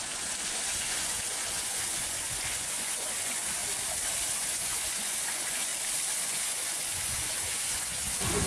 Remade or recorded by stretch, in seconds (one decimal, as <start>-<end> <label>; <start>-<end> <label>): 0.0-3.6 remade; 3.6-4.3 recorded; 4.3-5.7 remade; 5.7-6.2 recorded; 6.2-8.5 remade